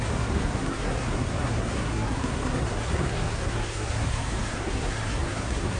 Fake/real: fake